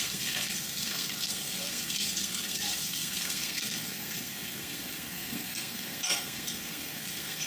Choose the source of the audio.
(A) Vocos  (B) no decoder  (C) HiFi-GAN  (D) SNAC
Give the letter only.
D